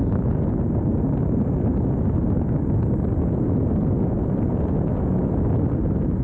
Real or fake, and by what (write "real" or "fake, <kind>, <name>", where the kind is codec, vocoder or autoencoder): real